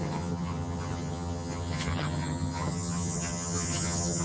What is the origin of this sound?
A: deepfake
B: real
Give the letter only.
A